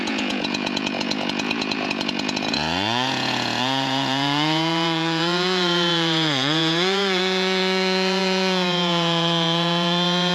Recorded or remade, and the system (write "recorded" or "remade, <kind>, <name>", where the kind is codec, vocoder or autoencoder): remade, vocoder, Vocos